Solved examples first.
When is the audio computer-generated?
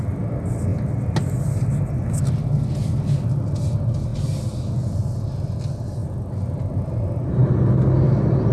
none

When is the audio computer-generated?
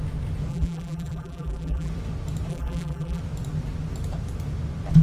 0.5-1.9; 2.5-3.2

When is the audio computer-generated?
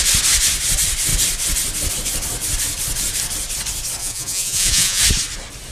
4.0-5.0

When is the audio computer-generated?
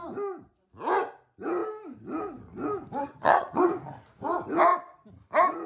3.0-3.6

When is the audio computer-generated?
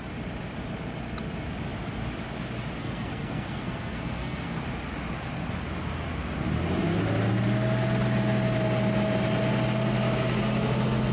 2.8-4.6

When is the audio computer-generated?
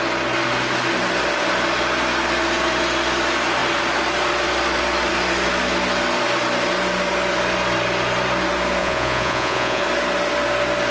8.8-9.8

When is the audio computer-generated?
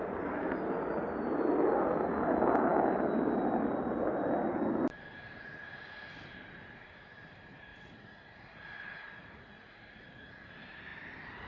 7.7-10.3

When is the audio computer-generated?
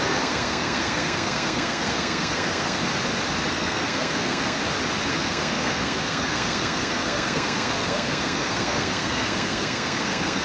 0.0-2.8; 3.5-4.6; 5.1-10.4